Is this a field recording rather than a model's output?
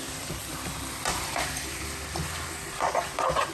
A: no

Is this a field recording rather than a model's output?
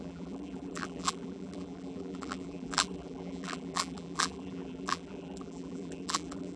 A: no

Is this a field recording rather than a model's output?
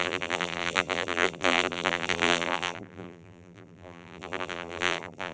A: no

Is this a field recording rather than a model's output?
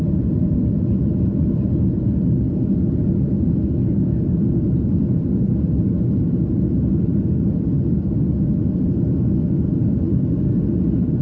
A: yes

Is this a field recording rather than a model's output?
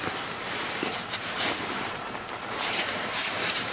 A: no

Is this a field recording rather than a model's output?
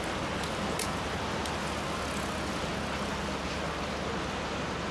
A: yes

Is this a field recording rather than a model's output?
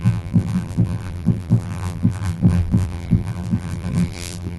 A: no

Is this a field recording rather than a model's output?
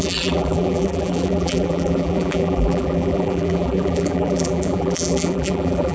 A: no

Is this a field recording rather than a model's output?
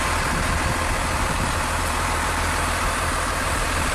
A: no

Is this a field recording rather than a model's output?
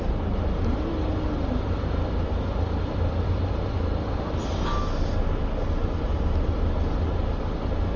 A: yes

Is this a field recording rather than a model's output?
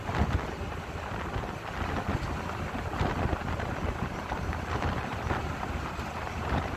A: yes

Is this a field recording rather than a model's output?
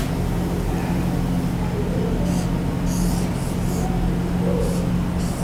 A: yes